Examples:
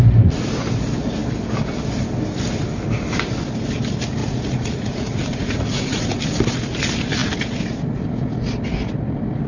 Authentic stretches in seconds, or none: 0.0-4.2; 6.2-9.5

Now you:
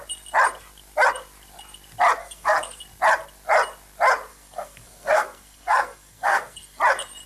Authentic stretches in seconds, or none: 0.0-2.2; 2.8-4.3; 6.8-7.3

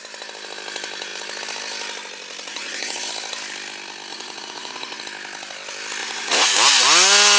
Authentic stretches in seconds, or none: 0.0-2.5; 3.1-4.1; 5.0-6.0; 6.5-7.4

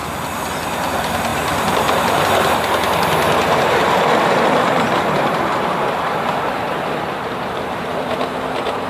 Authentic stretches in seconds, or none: 0.0-1.3; 2.2-3.5; 8.2-8.9